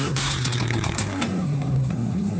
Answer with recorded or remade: remade